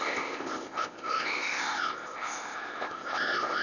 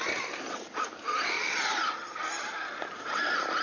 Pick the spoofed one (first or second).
first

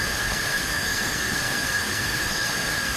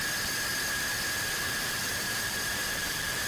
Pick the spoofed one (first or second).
first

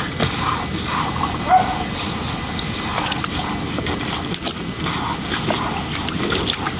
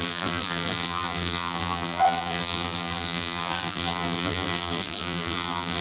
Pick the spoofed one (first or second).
second